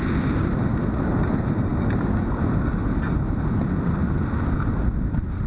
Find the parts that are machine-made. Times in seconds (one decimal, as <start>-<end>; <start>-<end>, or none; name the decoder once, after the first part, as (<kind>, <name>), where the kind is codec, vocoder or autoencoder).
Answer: none

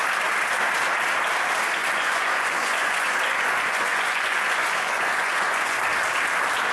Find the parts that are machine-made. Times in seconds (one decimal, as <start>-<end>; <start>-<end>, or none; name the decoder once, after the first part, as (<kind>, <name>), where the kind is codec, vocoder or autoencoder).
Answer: 1.8-5.8 (vocoder, Vocos)

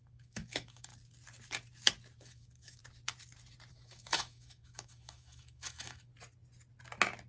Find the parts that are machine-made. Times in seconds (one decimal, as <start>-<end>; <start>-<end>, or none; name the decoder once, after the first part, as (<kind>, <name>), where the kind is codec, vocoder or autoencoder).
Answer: 0.0-0.9 (autoencoder, DAC-VAE); 2.2-2.8; 3.7-6.1